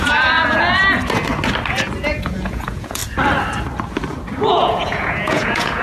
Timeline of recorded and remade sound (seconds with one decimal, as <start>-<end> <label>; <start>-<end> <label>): 0.0-0.8 remade; 0.8-2.0 recorded; 2.0-3.0 remade; 3.0-4.4 recorded; 4.4-5.8 remade